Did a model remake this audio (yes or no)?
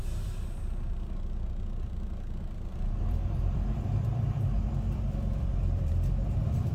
yes